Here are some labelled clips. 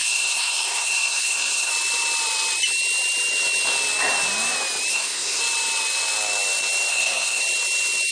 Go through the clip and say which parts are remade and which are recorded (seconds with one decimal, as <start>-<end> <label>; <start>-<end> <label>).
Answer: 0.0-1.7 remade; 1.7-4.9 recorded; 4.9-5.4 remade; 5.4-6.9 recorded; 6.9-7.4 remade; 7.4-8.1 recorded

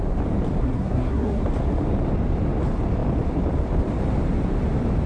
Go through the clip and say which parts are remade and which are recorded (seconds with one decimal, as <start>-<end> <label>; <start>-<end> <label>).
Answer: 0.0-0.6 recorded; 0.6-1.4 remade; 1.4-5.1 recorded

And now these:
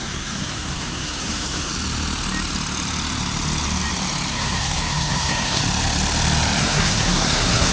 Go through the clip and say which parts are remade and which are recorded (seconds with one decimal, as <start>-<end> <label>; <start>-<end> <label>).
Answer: 0.0-1.7 remade; 1.7-4.3 recorded; 4.3-5.6 remade; 5.6-6.6 recorded; 6.6-7.7 remade

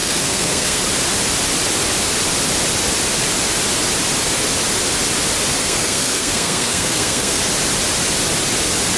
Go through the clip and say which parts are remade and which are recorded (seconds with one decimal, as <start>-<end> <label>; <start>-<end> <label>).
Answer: 0.0-0.8 remade; 0.8-5.6 recorded; 5.6-7.4 remade; 7.4-9.0 recorded

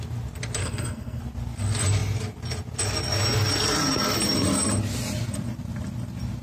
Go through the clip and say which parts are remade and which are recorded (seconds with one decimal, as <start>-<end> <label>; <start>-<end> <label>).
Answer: 0.0-0.6 recorded; 0.6-1.2 remade; 1.2-6.4 recorded